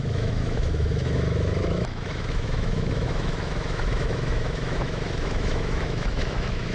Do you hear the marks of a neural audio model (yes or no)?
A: yes